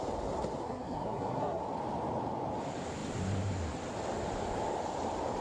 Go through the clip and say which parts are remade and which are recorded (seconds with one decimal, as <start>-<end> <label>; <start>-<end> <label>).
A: 0.0-0.6 recorded; 0.6-1.6 remade; 1.6-5.4 recorded